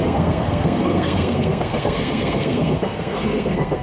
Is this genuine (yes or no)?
no